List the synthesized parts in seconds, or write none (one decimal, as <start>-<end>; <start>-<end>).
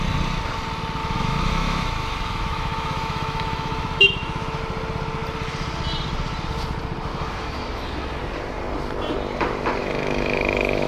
1.0-4.6; 7.1-8.2; 9.8-10.9